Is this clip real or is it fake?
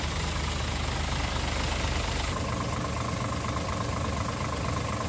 real